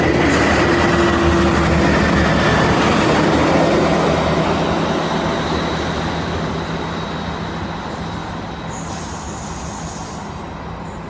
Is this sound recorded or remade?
recorded